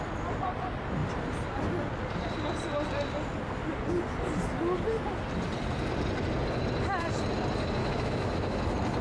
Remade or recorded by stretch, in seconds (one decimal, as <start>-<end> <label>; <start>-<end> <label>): 0.0-7.8 recorded; 7.8-8.6 remade; 8.6-9.0 recorded